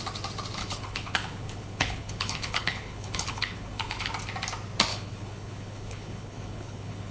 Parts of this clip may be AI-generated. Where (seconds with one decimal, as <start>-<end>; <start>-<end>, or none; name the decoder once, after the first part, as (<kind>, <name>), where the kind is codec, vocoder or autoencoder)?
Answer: 0.6-4.1 (codec, HILCodec); 4.9-7.1